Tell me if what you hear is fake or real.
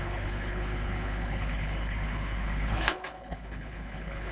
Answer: fake